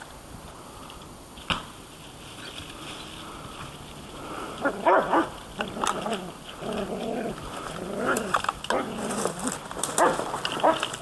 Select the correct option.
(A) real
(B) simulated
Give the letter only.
A